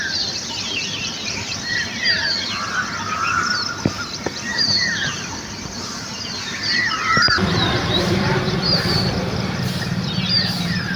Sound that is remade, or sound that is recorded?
remade